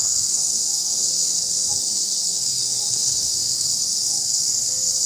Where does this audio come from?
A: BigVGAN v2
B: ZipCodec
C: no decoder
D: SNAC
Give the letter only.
D